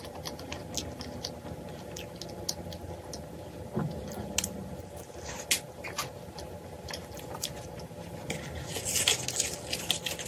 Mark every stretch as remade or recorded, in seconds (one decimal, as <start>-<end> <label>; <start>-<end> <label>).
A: 0.0-10.3 recorded